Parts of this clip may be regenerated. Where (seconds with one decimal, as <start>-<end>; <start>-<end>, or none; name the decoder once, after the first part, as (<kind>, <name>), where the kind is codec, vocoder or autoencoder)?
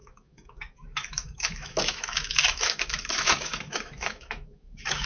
0.0-5.1 (autoencoder, DAC-VAE)